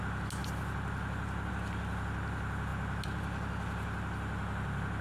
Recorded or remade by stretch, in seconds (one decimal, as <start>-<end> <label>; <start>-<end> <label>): 0.0-5.0 recorded